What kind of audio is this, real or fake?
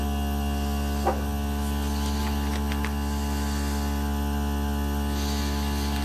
real